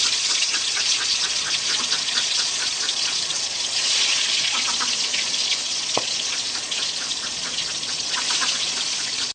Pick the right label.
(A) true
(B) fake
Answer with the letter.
B